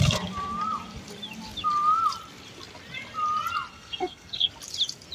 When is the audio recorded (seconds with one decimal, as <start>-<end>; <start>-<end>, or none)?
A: 0.0-3.7; 4.5-5.1